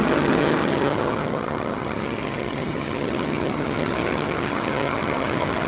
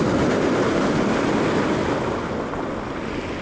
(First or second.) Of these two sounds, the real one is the second